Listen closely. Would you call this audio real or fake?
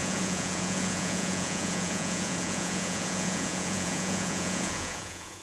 fake